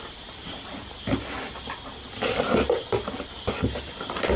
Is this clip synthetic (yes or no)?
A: yes